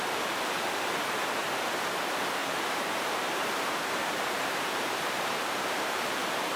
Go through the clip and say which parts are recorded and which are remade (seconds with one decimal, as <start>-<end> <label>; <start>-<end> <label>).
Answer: 0.0-2.4 recorded; 2.4-6.6 remade